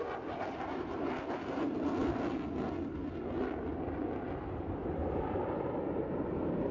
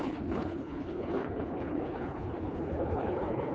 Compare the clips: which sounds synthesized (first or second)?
second